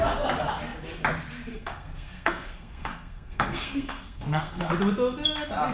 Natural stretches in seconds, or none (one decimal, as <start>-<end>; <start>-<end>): 0.0-1.5; 4.7-5.7